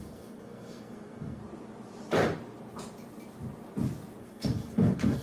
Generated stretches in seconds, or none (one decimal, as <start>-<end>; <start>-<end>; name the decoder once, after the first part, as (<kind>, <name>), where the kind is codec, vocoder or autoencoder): 0.0-1.4 (codec, SNAC); 4.2-5.2